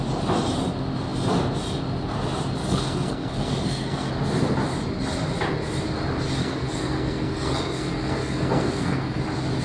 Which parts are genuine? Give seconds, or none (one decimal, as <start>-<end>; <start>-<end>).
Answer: 0.0-2.6; 4.1-6.4; 9.2-9.6